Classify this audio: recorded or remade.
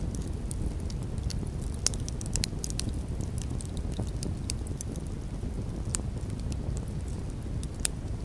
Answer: recorded